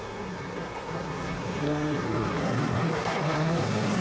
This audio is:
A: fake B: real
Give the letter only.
A